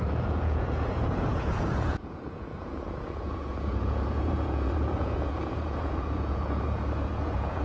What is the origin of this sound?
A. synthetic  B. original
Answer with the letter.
A